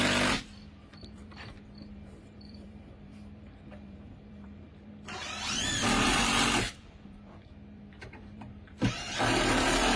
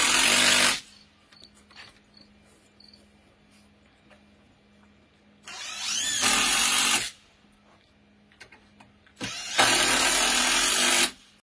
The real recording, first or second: second